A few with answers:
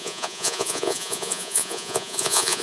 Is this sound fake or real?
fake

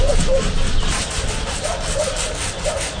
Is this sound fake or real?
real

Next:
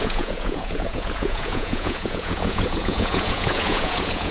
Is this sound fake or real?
fake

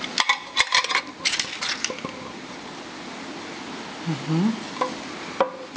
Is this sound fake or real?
real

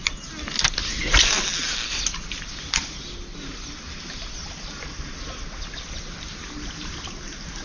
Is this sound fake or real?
real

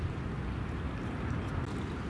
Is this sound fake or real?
real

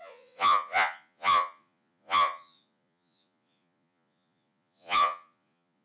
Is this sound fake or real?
fake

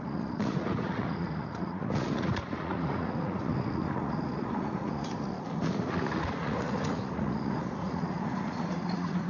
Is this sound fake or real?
fake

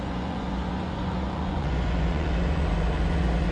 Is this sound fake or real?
fake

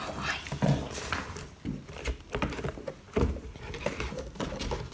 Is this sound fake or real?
real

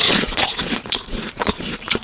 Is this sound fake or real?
fake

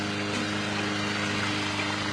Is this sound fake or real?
real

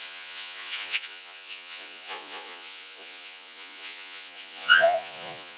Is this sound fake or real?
fake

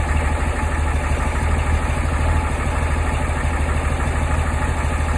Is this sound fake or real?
real